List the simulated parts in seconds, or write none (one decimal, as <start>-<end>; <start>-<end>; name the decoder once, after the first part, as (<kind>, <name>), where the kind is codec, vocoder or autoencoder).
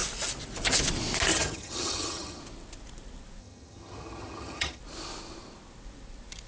1.3-2.4 (vocoder, HiFi-GAN); 3.4-4.8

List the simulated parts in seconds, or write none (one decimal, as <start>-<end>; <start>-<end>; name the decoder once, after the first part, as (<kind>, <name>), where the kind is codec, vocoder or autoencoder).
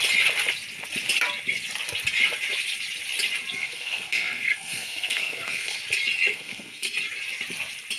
3.6-5.8 (codec, SNAC); 6.3-6.9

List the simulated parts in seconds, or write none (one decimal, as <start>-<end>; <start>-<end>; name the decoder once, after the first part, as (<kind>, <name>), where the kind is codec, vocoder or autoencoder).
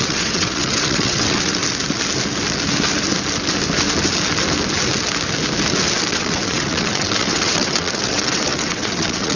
0.0-1.6 (vocoder, WaveNeXt); 6.1-9.4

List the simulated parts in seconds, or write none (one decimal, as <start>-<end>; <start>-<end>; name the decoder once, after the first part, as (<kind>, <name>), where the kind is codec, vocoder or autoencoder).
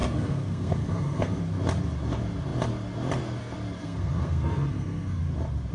0.0-1.4 (codec, SNAC); 3.8-5.2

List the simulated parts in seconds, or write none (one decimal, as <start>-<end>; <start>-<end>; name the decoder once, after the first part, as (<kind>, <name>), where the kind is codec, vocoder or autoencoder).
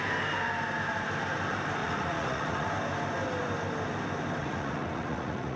1.8-2.7 (vocoder, Vocos); 4.4-5.6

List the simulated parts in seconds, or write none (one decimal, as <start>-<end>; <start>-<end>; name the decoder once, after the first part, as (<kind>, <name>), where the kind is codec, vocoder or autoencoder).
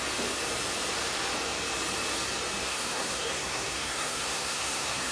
2.6-5.1 (codec, SNAC)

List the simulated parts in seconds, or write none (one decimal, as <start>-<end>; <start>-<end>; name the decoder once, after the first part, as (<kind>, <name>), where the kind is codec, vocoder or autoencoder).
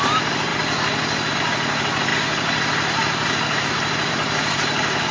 0.0-0.5 (vocoder, BigVGAN v2); 1.3-5.1